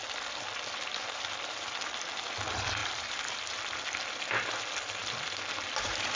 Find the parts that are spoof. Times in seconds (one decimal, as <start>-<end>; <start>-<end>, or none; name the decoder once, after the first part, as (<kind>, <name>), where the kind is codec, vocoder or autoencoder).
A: 0.0-1.3 (vocoder, BigVGAN v2); 2.8-4.5